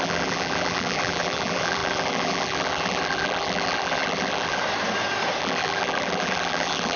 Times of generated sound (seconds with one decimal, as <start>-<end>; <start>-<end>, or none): 0.0-4.6; 5.4-7.0